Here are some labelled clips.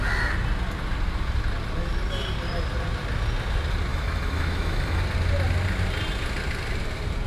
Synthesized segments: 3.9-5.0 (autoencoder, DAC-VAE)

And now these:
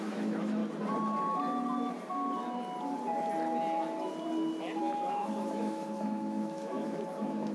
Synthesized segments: 0.0-0.6 (autoencoder, DAC-VAE); 4.8-7.5

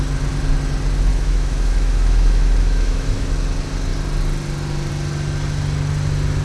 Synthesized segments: 1.1-3.3 (autoencoder, DAC-VAE)

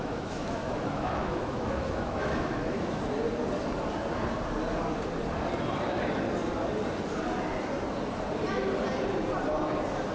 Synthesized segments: 0.0-3.0 (autoencoder, DAC-VAE)

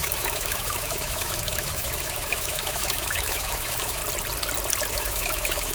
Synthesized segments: 0.0-4.0 (autoencoder, DAC-VAE); 4.9-5.7

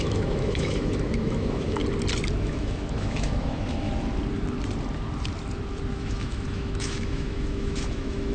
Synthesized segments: 0.0-1.8 (autoencoder, DAC-VAE); 2.4-3.9; 5.9-8.3